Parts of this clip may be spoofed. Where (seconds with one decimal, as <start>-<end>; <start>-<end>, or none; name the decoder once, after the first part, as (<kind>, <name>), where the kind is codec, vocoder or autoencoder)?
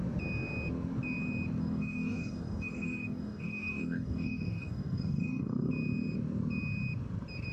1.6-5.7 (codec, DAC)